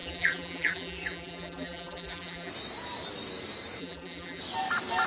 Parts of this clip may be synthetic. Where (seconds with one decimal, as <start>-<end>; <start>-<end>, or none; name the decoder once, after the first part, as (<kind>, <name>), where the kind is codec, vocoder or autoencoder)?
0.0-2.5 (vocoder, BigVGAN v2); 3.8-4.4

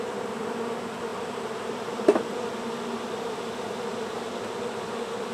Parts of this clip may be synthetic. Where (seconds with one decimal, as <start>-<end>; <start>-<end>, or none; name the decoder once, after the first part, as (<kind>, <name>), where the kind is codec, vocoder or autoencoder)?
none